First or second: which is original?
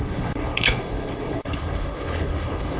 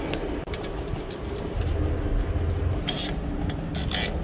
second